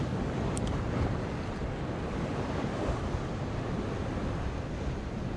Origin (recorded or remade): recorded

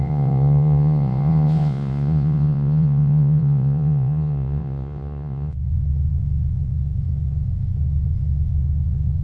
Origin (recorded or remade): remade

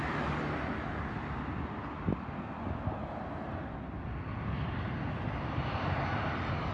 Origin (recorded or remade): recorded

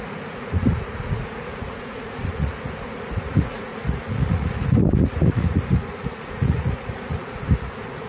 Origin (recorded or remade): remade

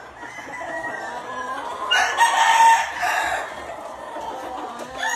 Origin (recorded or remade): recorded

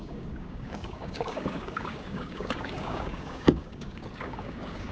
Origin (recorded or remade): remade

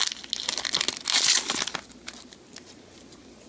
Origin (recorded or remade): recorded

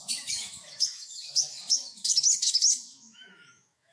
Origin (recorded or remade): remade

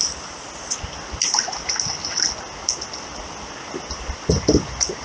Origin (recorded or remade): recorded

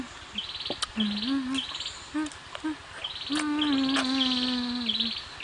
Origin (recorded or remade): recorded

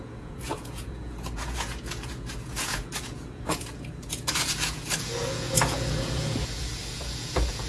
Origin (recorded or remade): remade